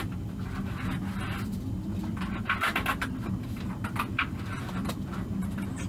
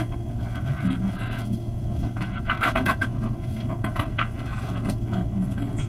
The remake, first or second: second